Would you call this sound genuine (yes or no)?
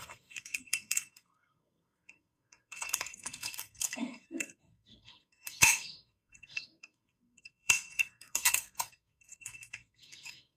no